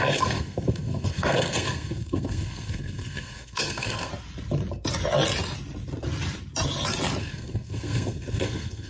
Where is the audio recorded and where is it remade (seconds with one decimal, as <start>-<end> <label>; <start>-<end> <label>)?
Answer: 0.0-4.1 remade; 4.1-7.2 recorded; 7.2-8.9 remade